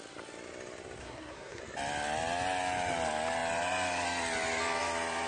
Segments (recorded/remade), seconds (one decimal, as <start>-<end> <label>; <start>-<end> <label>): 0.0-1.0 recorded; 1.0-1.6 remade; 1.6-5.3 recorded